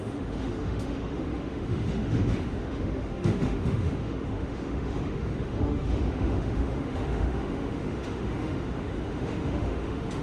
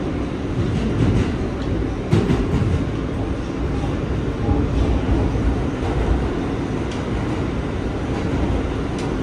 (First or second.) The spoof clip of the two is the first